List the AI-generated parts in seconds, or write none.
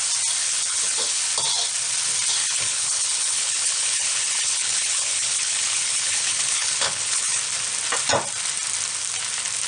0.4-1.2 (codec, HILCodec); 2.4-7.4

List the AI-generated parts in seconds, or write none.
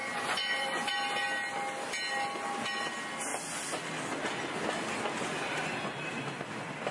0.0-0.9 (vocoder, Vocos)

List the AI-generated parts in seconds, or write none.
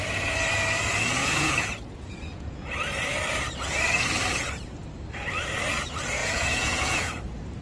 1.2-2.7 (vocoder, Vocos); 6.2-7.1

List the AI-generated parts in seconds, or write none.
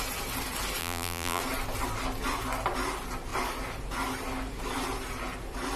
0.8-1.4 (vocoder, BigVGAN v2)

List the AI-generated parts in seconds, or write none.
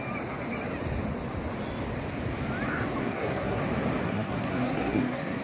3.0-3.6 (codec, SNAC); 4.0-5.4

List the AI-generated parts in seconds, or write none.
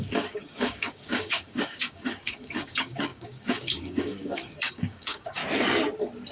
0.0-5.4 (codec, DAC)